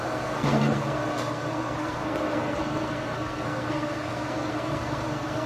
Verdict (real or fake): fake